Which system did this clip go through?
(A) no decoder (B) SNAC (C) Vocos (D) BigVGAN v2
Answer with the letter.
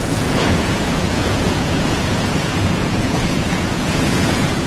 C